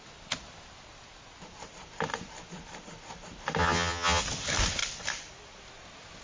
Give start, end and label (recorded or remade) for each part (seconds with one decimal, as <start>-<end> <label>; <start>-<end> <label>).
0.0-3.6 recorded; 3.6-4.2 remade; 4.2-6.2 recorded